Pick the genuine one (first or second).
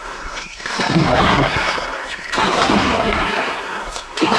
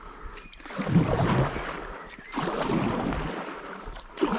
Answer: second